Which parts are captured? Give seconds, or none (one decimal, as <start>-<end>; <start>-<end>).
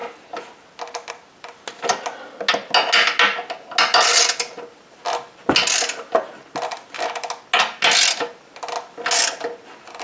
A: 0.0-10.0